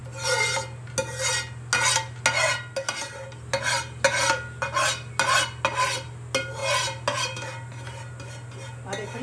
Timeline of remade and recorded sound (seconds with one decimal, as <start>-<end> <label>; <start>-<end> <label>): 0.0-9.2 recorded